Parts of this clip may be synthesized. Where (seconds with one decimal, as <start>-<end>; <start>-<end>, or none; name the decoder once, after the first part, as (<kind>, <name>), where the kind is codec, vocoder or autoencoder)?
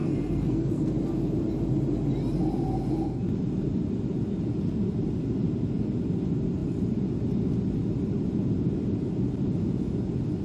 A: 0.0-0.9 (codec, SNAC)